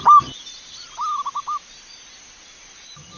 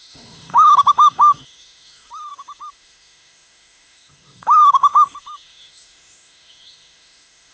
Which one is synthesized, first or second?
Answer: second